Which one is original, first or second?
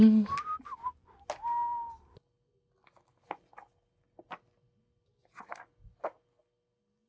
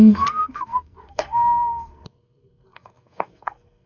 first